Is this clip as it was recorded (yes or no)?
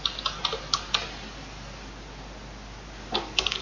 yes